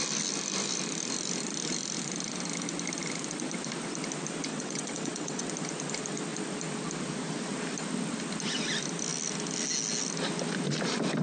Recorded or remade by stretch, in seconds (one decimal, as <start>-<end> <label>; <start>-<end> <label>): 0.0-4.5 recorded; 4.5-5.5 remade; 5.5-11.2 recorded

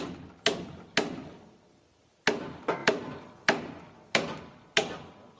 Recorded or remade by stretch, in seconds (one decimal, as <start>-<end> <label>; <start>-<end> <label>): 0.0-1.2 recorded; 1.2-1.7 remade; 1.7-2.8 recorded; 2.8-5.4 remade